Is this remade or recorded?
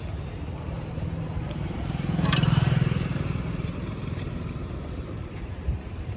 remade